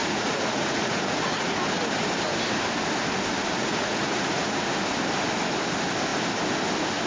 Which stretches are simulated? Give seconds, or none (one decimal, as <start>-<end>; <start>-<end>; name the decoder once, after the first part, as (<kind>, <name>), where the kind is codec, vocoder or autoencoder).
0.0-1.6 (vocoder, Vocos); 3.6-4.7